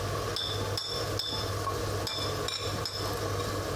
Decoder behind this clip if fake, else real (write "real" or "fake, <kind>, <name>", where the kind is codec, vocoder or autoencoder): real